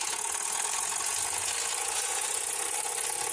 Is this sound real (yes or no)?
no